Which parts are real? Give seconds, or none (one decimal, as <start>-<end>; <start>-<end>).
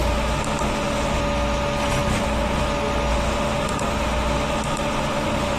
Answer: 1.2-2.1; 2.7-3.1